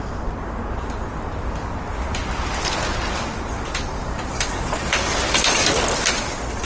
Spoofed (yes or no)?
no